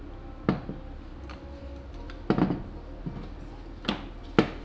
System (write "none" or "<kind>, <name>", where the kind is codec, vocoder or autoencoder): none